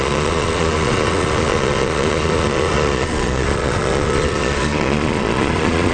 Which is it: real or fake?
fake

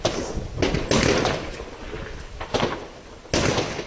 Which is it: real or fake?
real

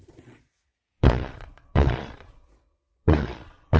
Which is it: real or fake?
fake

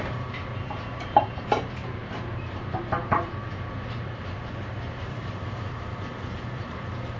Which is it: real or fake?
fake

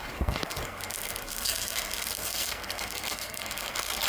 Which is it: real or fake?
fake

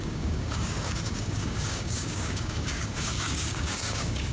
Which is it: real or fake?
fake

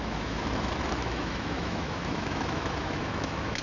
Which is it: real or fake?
fake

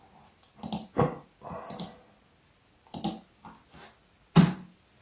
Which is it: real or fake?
real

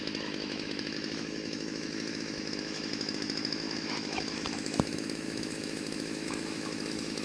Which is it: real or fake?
fake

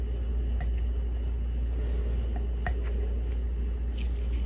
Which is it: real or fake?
real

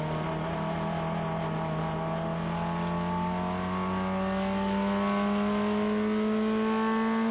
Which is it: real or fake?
real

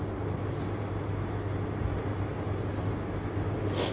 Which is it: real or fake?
real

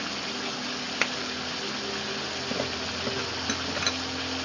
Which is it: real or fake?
real